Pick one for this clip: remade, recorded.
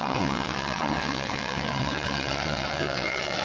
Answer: remade